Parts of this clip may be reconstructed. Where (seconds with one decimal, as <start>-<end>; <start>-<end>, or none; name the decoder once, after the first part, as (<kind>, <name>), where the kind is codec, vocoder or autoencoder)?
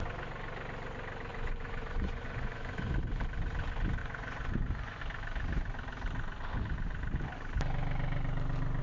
1.3-2.9 (vocoder, Vocos); 4.0-5.0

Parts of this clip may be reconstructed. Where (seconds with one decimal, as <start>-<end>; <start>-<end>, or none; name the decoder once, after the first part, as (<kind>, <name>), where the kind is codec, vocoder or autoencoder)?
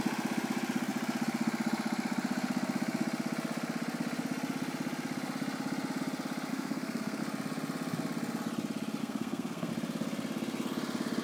6.5-7.2 (codec, SNAC); 9.0-9.7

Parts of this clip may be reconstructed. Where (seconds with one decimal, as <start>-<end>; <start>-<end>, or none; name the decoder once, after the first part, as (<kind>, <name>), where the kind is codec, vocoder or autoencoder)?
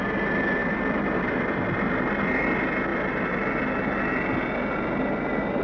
0.6-2.3 (vocoder, BigVGAN v2); 2.9-5.6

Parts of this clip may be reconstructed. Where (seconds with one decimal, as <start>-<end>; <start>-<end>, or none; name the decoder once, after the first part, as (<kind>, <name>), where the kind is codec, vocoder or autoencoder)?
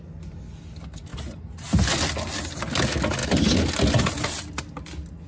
none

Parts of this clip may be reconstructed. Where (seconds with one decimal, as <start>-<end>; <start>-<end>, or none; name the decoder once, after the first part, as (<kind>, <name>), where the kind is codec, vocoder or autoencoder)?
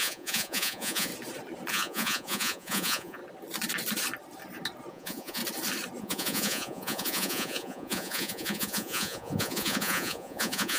0.0-1.1 (vocoder, Vocos); 1.7-3.2; 4.9-5.4; 6.0-10.8